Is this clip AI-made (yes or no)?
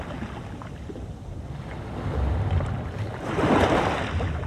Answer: no